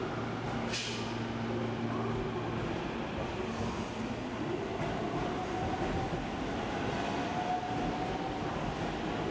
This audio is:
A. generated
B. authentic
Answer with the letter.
B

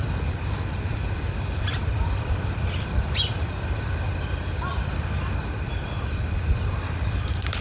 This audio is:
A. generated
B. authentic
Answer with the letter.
A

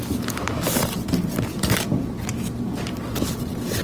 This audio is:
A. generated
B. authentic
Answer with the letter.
A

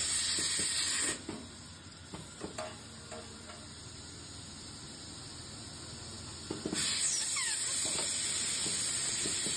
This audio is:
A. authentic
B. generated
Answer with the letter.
A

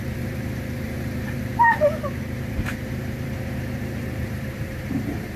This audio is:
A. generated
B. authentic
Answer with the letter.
A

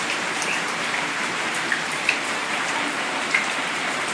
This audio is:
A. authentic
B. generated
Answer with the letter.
B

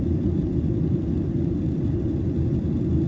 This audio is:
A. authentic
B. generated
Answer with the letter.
B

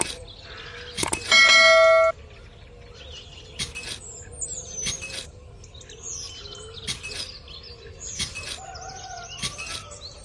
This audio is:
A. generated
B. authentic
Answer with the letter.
B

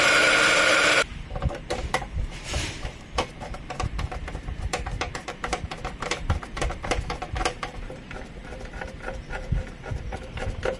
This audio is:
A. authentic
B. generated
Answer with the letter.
B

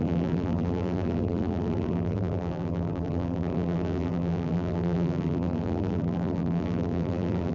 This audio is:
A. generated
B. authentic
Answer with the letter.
A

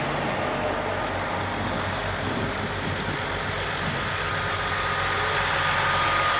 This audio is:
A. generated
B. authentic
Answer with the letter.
B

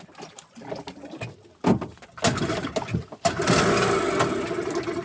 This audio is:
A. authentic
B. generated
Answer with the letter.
A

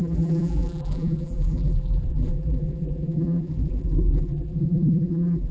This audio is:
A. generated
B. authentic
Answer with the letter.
A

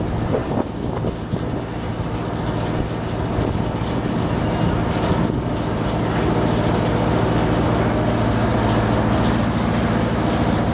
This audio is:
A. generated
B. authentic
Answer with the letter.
B